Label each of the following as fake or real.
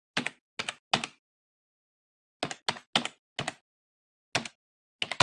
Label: real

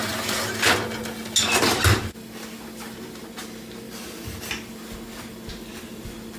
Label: real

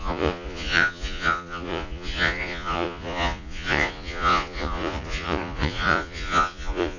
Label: fake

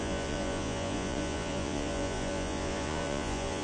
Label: fake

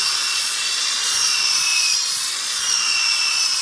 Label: fake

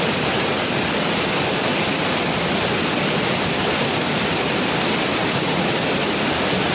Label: real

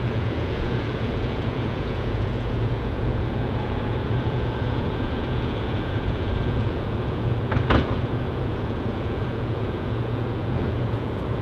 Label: fake